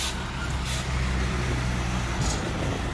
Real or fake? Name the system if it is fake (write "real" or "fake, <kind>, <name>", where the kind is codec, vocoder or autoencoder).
real